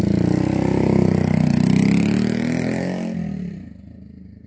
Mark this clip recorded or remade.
recorded